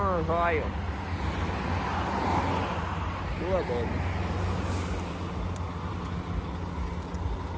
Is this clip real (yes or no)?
yes